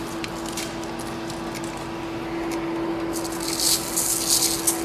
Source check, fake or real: real